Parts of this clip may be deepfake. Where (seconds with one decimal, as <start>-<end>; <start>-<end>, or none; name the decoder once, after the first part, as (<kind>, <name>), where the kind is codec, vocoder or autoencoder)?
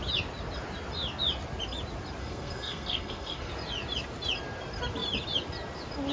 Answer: 2.2-3.5 (codec, SNAC)